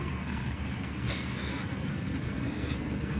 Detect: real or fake fake